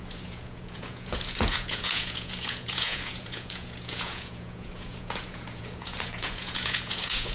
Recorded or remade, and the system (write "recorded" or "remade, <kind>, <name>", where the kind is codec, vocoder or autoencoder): remade, vocoder, Vocos